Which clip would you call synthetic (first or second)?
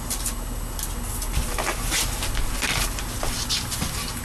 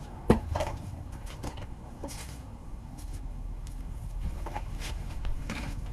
second